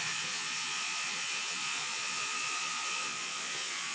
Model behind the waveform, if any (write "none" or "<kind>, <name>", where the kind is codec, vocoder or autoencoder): vocoder, Vocos